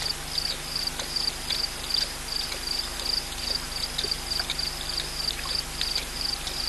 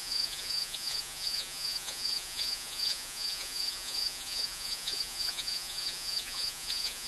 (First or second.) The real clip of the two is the first